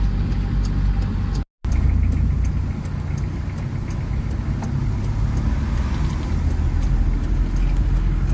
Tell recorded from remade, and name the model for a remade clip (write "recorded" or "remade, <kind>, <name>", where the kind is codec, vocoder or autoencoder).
recorded